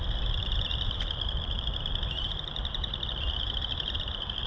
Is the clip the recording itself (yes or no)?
yes